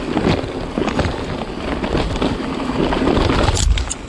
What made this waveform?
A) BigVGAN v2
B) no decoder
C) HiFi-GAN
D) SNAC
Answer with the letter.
B